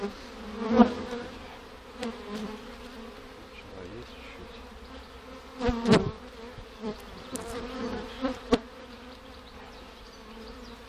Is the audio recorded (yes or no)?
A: no